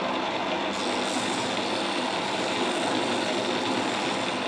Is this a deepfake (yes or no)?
no